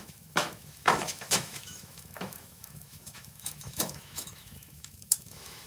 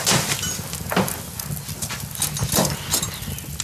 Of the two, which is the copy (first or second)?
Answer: first